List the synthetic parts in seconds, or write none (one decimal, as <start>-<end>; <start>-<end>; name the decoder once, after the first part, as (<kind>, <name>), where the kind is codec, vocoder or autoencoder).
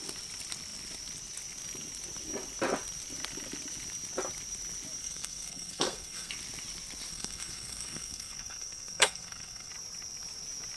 5.0-6.3 (codec, SNAC); 7.1-9.7